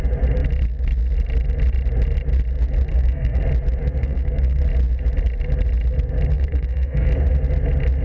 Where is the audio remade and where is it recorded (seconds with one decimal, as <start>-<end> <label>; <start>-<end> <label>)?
0.0-2.9 recorded; 2.9-3.4 remade; 3.4-4.0 recorded; 4.0-4.6 remade; 4.6-6.3 recorded; 6.3-7.1 remade; 7.1-8.0 recorded